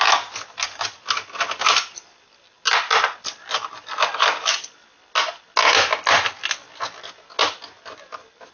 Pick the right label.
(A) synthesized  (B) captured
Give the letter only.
B